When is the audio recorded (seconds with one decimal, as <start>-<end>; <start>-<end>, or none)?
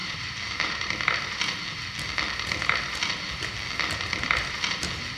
0.9-5.2